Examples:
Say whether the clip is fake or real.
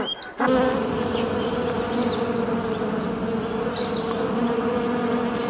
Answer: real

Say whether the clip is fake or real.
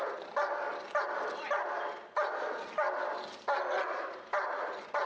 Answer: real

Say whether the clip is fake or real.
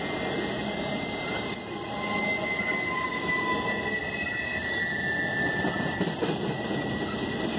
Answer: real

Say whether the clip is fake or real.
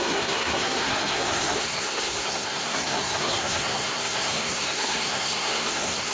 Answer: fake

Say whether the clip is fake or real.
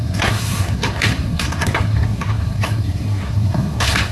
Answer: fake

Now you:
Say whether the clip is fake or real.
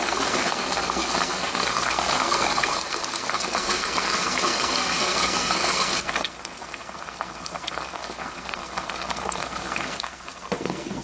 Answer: fake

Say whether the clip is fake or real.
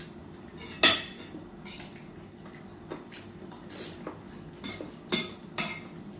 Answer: real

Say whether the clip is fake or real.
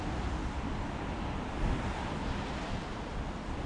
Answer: real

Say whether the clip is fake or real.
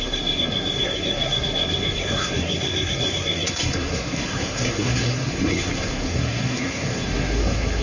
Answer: fake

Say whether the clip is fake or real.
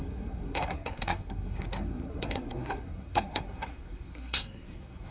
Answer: fake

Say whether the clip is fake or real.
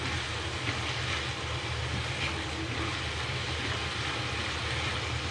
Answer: real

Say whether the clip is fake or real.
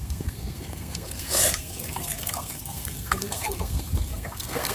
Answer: fake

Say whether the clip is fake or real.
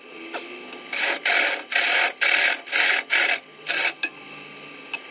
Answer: real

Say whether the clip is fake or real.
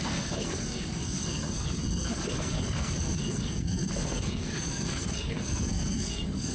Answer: fake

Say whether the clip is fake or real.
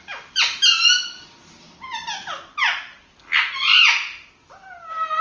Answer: real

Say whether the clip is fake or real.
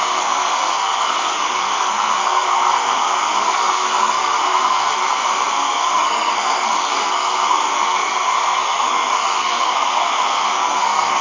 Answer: fake